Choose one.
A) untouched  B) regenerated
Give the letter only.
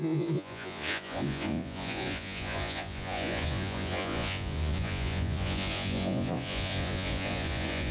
B